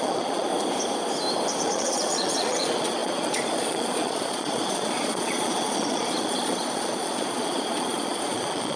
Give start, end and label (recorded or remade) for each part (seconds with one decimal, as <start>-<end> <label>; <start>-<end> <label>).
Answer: 0.0-0.5 remade; 0.5-1.6 recorded; 1.6-8.8 remade